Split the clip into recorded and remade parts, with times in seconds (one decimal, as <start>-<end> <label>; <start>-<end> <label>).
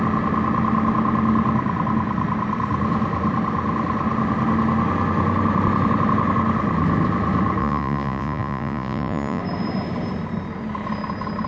0.0-7.6 recorded; 7.6-9.4 remade; 9.4-11.5 recorded